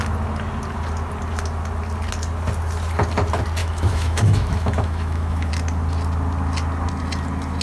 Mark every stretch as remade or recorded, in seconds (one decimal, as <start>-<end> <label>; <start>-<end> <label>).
0.0-3.6 recorded; 3.6-5.5 remade; 5.5-7.6 recorded